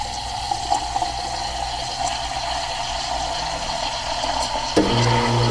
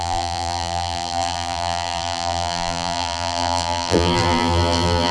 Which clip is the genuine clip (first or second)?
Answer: first